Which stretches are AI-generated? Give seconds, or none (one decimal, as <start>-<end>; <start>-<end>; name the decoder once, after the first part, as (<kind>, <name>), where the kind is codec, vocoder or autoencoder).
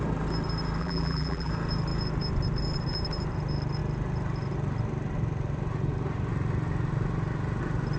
0.8-1.5 (vocoder, BigVGAN v2)